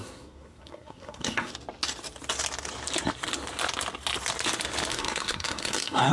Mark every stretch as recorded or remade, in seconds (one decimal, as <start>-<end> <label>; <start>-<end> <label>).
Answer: 0.0-1.5 remade; 1.5-4.9 recorded; 4.9-6.1 remade